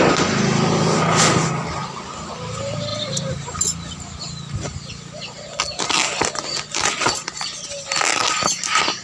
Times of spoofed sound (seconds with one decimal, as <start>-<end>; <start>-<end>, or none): none